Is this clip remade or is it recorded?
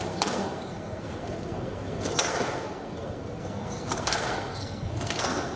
remade